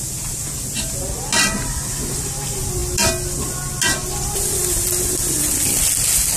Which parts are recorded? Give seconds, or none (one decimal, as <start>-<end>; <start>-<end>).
0.0-6.4